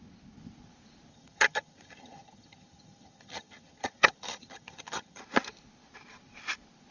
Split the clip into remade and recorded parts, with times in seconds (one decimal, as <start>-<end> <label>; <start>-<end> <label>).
0.0-1.1 recorded; 1.1-5.2 remade; 5.2-6.9 recorded